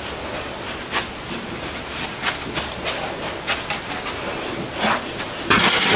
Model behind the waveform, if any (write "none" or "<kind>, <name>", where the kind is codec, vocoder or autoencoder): none